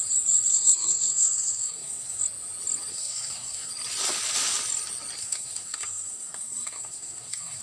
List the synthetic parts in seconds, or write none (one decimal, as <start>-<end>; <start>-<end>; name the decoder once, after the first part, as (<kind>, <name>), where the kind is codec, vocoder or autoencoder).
0.5-2.2 (codec, SNAC); 2.9-3.7; 5.2-7.6